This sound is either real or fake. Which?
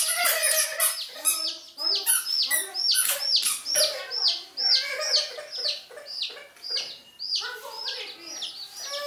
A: real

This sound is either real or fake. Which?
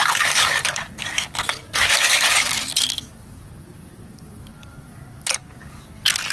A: fake